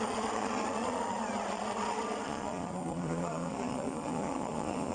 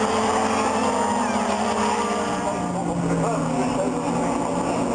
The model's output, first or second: first